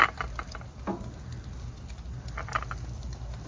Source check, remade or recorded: recorded